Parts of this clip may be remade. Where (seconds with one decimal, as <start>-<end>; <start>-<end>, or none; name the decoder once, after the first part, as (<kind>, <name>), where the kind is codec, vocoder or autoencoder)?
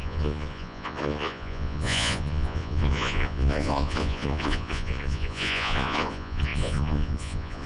0.0-7.7 (vocoder, Vocos)